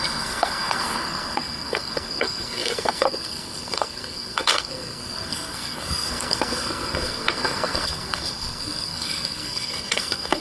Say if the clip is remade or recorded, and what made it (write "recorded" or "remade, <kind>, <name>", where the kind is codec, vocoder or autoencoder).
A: remade, codec, SNAC